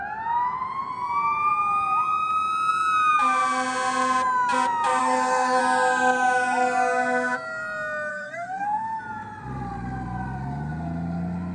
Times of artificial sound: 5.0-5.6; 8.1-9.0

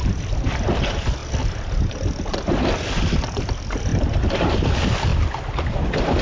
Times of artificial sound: none

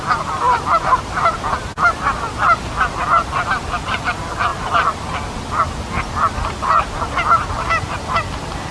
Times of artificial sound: none

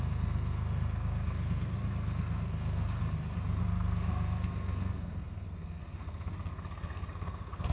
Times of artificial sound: 0.0-3.0; 3.6-7.7

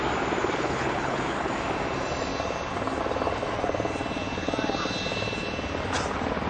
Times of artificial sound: 0.4-1.5

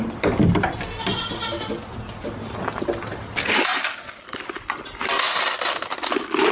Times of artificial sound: none

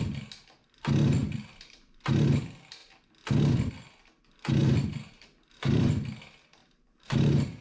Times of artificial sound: 1.2-2.1; 4.6-5.9; 6.6-7.6